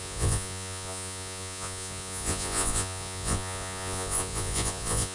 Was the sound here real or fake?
fake